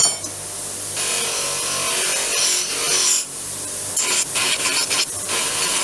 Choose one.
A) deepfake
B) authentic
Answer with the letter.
B